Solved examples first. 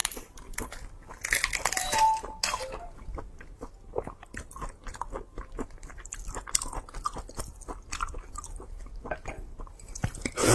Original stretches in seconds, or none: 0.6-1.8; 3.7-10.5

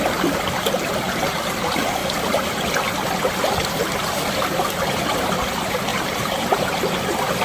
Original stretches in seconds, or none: 0.0-5.9; 6.6-7.4

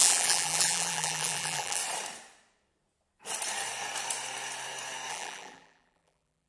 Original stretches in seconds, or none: 1.8-5.1